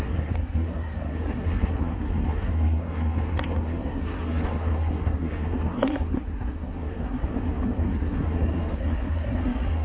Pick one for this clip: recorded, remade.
remade